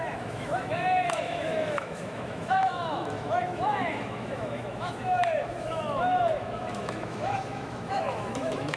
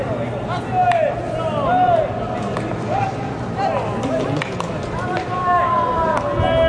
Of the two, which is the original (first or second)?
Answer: second